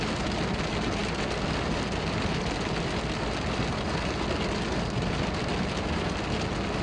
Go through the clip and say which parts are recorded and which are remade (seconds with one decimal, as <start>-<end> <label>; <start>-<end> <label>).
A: 0.0-6.8 recorded